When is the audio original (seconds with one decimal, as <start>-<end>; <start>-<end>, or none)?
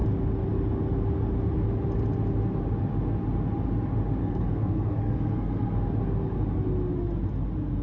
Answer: 0.0-4.2; 5.9-7.8